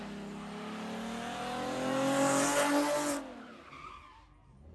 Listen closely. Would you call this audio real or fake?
real